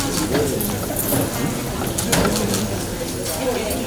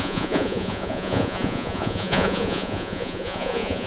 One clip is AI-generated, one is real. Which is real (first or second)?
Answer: first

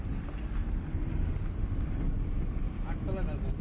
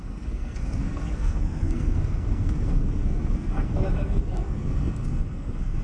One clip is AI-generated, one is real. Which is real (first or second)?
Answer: first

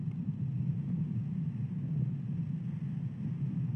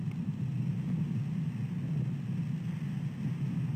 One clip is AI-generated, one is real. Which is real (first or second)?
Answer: second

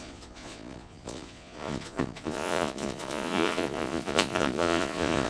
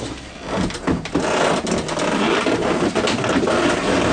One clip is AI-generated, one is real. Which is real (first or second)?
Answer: second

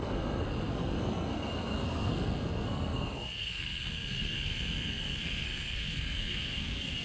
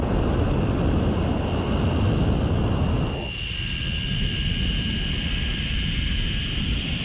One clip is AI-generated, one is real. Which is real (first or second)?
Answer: second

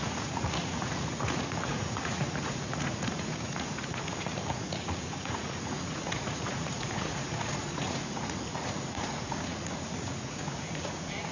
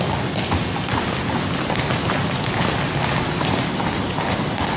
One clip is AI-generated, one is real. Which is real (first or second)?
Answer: second